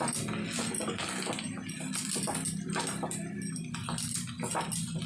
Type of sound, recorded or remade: recorded